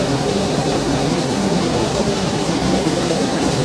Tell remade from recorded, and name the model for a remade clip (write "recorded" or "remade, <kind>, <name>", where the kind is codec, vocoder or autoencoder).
remade, codec, SNAC